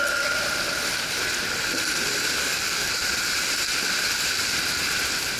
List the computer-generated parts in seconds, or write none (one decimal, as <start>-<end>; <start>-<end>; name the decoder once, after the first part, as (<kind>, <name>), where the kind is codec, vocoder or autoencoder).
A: 2.4-2.9 (codec, SNAC)